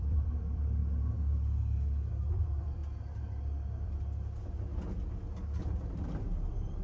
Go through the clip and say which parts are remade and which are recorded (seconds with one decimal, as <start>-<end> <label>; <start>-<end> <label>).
0.0-0.8 remade; 0.8-2.1 recorded; 2.1-2.8 remade; 2.8-5.6 recorded; 5.6-6.8 remade